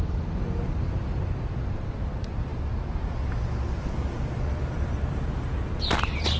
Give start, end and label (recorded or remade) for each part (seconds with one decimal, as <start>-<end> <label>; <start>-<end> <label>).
0.0-6.4 recorded